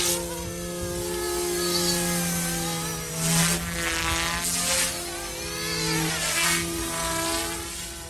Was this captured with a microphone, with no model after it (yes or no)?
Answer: yes